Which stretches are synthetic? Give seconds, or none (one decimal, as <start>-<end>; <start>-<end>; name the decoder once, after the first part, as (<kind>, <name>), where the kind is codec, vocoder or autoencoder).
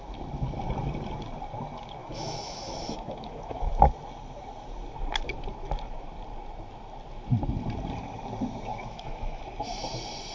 2.0-3.7 (autoencoder, DAC-VAE); 8.7-9.4